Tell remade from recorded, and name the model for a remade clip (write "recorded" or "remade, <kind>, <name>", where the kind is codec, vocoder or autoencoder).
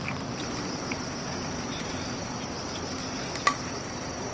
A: recorded